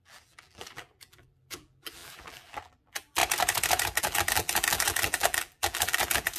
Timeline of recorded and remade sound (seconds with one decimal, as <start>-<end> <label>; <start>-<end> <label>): 0.0-3.2 remade; 3.2-4.0 recorded; 4.0-6.4 remade